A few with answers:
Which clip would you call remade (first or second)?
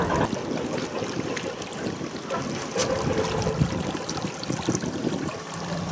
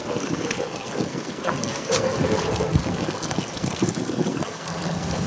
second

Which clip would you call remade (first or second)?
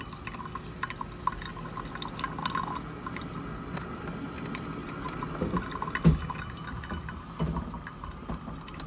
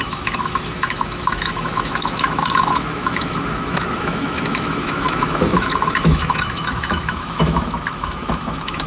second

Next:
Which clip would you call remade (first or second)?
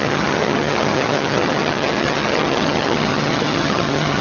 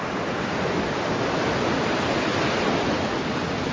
first